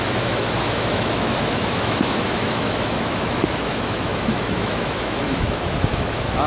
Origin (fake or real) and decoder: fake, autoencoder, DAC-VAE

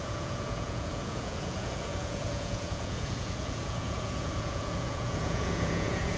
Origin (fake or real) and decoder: fake, vocoder, Vocos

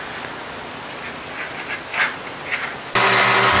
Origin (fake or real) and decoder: real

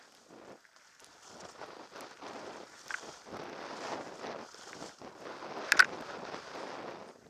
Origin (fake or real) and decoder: real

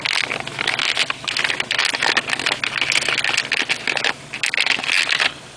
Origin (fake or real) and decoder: real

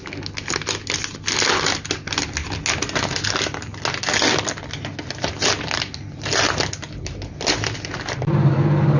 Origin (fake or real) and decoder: real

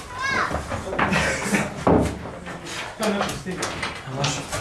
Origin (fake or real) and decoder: real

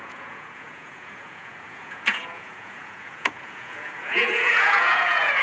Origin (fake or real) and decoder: fake, vocoder, Vocos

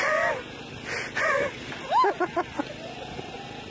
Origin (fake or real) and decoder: real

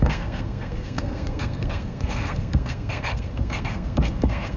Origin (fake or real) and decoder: fake, codec, SNAC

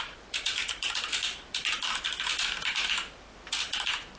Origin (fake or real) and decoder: fake, vocoder, BigVGAN v2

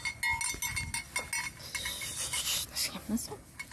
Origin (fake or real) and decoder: real